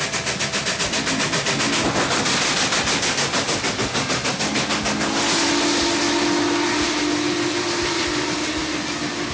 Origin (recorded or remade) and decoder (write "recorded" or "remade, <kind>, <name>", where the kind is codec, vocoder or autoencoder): recorded